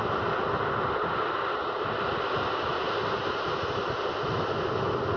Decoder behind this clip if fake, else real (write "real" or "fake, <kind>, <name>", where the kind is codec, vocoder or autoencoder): real